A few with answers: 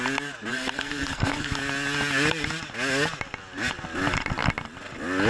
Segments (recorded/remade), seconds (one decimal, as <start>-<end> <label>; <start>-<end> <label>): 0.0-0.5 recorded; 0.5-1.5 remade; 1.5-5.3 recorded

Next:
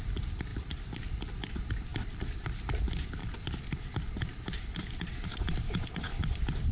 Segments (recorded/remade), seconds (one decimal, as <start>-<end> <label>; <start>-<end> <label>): 0.0-6.7 recorded

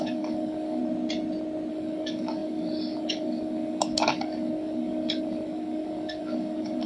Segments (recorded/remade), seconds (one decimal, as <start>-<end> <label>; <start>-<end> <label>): 0.0-0.8 remade; 0.8-1.7 recorded; 1.7-6.9 remade

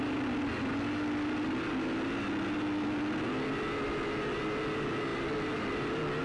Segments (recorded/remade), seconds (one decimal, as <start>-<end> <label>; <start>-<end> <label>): 0.0-6.2 recorded

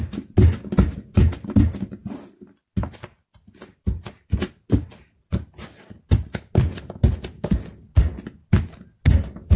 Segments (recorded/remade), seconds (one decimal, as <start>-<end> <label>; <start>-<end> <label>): 0.0-9.6 recorded

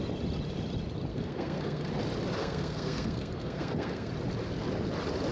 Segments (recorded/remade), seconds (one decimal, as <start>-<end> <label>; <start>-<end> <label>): 0.0-1.1 recorded; 1.1-1.9 remade; 1.9-2.4 recorded; 2.4-4.1 remade; 4.1-5.3 recorded

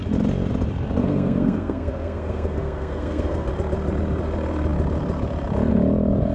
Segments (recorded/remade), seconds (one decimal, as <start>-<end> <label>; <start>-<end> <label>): 0.0-1.0 recorded; 1.0-3.5 remade; 3.5-6.3 recorded

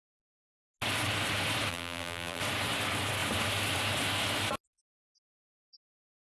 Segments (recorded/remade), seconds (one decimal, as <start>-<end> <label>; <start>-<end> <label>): 0.0-1.7 recorded; 1.7-2.4 remade; 2.4-6.3 recorded